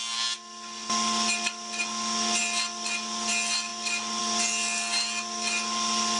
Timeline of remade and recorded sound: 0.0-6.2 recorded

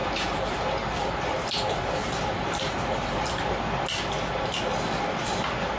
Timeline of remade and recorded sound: 0.0-3.5 remade; 3.5-5.8 recorded

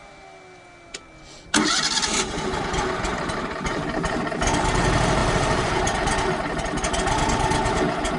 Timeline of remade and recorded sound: 0.0-3.1 recorded; 3.1-4.1 remade; 4.1-5.2 recorded; 5.2-6.3 remade; 6.3-8.2 recorded